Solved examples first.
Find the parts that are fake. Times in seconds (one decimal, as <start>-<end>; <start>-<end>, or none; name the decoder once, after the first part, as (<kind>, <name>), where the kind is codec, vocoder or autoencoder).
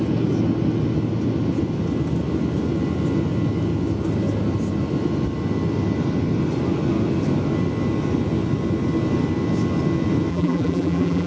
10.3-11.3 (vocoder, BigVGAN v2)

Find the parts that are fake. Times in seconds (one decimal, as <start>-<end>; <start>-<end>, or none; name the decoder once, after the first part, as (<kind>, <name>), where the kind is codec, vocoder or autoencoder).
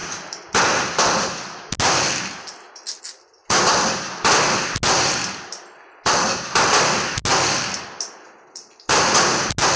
none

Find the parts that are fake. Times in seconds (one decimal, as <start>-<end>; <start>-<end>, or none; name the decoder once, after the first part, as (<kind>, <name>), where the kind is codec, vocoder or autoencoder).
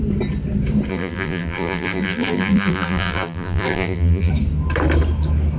0.9-4.3 (vocoder, BigVGAN v2)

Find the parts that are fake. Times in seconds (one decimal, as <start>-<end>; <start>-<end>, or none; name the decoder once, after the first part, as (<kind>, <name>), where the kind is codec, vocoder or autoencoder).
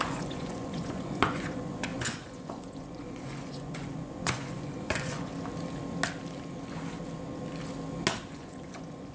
0.0-5.3 (vocoder, Vocos); 8.3-9.1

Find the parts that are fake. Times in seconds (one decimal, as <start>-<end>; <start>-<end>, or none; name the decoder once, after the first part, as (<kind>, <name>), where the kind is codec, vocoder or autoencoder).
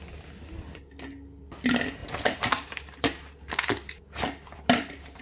2.0-3.5 (vocoder, BigVGAN v2)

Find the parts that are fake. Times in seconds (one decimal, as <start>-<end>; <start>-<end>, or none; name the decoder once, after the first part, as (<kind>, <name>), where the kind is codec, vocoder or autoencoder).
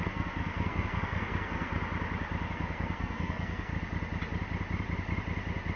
0.0-1.7 (codec, SNAC); 2.5-3.7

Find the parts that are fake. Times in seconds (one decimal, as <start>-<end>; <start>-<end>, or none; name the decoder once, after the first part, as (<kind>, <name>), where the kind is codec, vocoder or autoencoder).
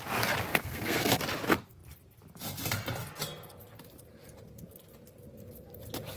0.5-1.2 (codec, SNAC)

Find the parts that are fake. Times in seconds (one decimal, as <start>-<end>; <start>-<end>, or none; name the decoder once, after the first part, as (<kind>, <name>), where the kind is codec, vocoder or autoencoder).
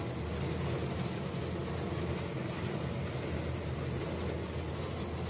none